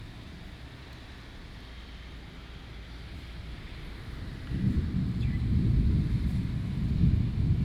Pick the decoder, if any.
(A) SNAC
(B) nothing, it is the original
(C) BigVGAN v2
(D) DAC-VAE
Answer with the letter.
B